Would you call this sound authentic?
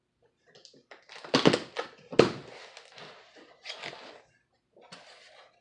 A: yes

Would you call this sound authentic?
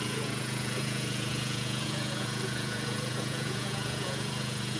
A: no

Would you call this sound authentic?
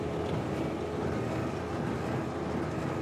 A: yes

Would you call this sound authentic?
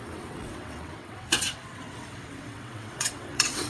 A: no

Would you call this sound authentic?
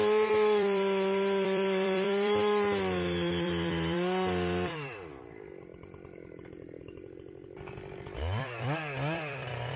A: no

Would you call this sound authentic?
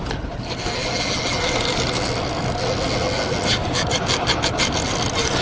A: yes